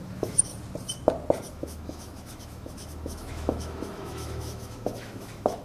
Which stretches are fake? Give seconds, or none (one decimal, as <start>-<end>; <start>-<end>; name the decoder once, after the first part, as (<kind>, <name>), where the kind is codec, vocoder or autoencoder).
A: 0.0-0.5 (autoencoder, DAC-VAE); 1.5-5.6